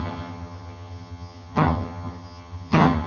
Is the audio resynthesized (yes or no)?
yes